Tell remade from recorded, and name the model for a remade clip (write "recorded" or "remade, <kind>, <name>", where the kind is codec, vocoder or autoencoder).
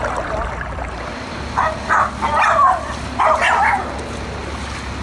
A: recorded